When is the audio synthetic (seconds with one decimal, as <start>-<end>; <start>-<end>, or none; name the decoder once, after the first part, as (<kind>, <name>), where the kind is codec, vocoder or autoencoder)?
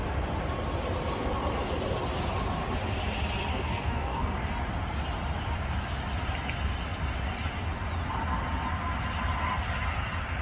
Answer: 3.5-4.3 (codec, DAC)